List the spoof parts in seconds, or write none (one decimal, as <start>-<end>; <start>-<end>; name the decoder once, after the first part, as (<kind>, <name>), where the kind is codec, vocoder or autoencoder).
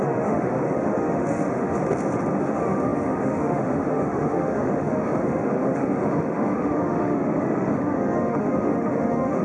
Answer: 0.0-1.8 (autoencoder, DAC-VAE); 2.4-9.4